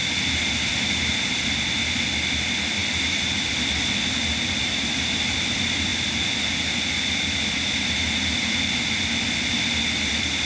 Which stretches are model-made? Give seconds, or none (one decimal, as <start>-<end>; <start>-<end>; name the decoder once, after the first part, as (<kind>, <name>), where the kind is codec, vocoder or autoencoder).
none